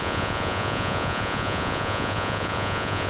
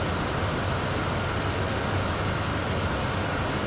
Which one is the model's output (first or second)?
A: first